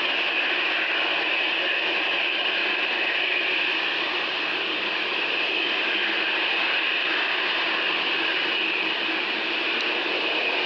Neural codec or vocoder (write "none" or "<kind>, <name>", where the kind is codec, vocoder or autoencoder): none